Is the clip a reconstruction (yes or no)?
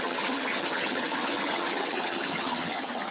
yes